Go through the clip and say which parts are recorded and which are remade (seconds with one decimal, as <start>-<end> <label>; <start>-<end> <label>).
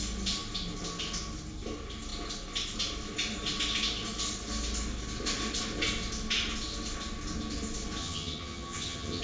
0.0-8.0 recorded; 8.0-9.2 remade